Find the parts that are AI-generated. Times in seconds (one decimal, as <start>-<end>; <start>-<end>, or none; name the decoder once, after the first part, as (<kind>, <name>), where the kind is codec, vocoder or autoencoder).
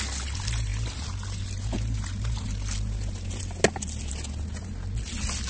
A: none